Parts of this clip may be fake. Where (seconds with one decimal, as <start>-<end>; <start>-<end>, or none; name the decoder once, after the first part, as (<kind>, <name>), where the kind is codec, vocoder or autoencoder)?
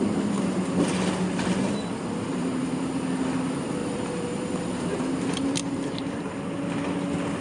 0.0-0.6 (vocoder, BigVGAN v2); 2.3-2.9; 3.8-6.4